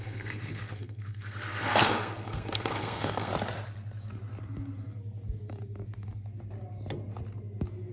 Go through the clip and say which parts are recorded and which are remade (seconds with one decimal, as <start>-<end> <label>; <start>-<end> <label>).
0.0-3.3 remade; 3.3-7.9 recorded